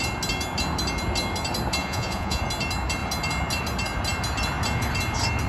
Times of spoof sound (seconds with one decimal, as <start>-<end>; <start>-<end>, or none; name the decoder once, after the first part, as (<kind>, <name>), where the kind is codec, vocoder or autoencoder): 1.8-2.4 (vocoder, Vocos)